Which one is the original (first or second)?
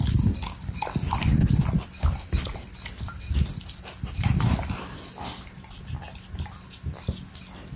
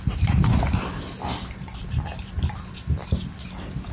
first